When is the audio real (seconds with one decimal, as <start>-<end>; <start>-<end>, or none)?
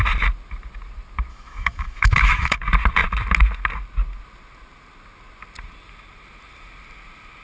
0.0-1.3; 2.6-7.4